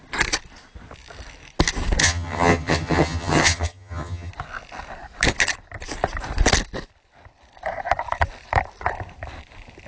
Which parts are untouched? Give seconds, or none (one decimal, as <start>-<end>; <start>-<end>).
0.0-2.0; 4.3-9.9